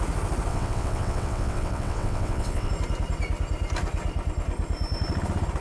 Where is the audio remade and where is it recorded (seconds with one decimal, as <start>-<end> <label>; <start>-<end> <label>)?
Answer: 0.0-0.5 recorded; 0.5-2.7 remade; 2.7-5.6 recorded